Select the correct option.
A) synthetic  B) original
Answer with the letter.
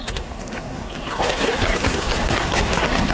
A